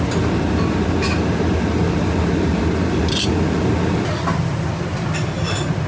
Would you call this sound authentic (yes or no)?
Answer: yes